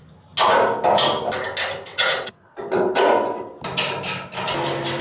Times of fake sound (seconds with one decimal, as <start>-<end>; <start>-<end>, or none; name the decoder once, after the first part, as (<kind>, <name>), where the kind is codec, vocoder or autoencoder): 1.9-2.9 (vocoder, WaveNeXt)